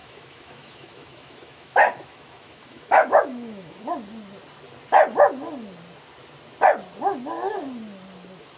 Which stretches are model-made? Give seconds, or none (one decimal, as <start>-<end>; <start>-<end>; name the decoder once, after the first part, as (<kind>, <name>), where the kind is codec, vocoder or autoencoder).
0.0-3.8 (autoencoder, DAC-VAE)